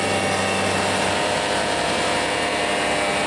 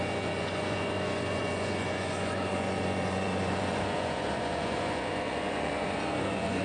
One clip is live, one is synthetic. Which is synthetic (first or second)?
second